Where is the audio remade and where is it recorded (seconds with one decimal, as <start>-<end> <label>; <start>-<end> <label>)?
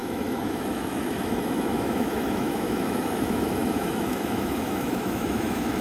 0.0-5.8 remade